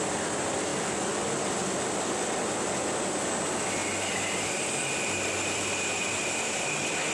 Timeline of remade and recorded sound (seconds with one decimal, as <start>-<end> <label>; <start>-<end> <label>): 0.0-7.1 recorded